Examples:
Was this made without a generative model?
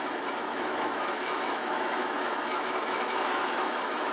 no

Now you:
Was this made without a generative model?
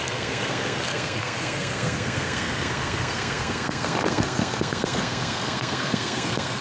no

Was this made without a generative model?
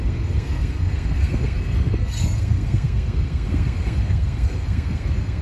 no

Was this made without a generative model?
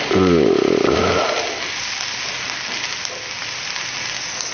yes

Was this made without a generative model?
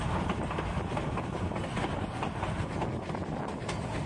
yes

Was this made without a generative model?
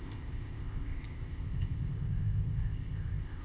no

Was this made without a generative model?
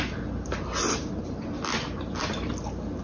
yes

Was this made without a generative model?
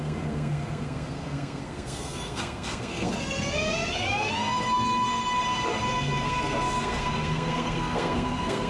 no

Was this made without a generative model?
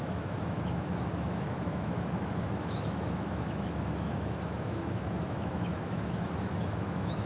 no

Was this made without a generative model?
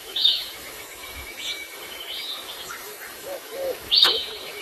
no